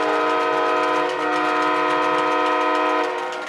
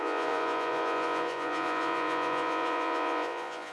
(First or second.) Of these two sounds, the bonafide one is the first